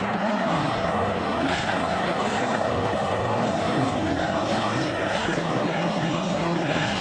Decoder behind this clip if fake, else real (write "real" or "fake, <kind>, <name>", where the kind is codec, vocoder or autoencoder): fake, codec, SNAC